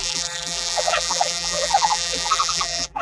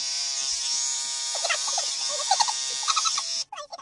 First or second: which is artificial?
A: first